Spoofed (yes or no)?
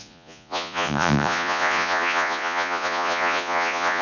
yes